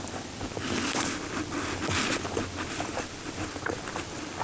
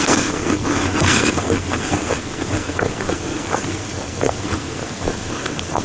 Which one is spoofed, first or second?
second